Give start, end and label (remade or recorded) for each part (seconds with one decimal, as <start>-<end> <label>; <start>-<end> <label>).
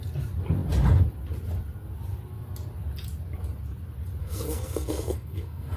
0.0-4.2 recorded; 4.2-5.8 remade